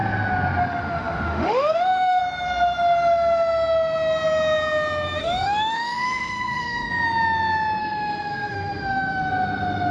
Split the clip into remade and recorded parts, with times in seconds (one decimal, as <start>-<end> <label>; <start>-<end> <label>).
0.0-0.6 recorded; 0.6-2.2 remade; 2.2-5.2 recorded; 5.2-6.9 remade; 6.9-7.8 recorded; 7.8-9.3 remade; 9.3-9.9 recorded